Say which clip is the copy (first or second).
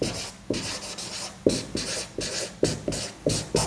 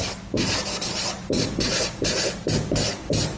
second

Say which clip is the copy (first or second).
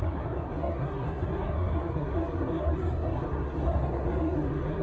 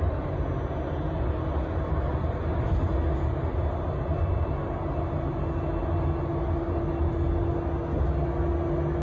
first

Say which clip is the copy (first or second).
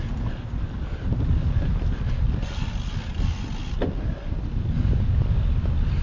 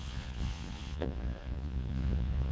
second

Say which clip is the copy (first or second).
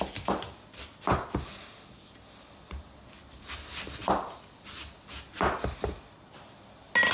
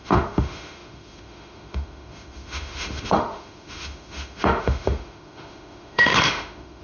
second